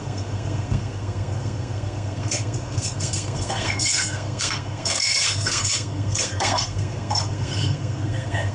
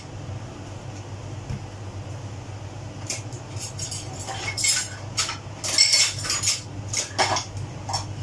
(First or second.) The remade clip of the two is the first